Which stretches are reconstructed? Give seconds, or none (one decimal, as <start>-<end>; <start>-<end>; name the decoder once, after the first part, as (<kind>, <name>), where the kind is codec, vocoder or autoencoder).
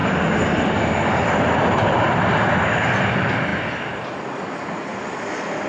none